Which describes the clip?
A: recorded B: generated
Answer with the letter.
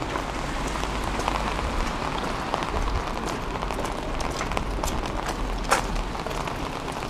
A